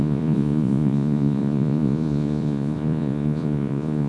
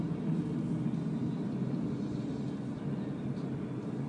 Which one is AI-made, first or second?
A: first